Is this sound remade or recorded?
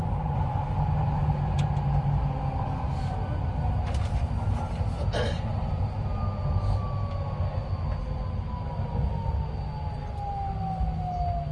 recorded